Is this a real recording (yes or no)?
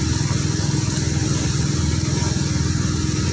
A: yes